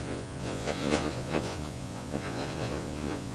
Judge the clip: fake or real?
fake